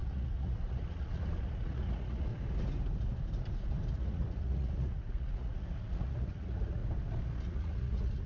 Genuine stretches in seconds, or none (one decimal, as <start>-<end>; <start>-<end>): 2.3-3.9; 6.8-7.4